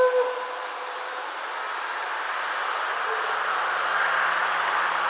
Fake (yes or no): no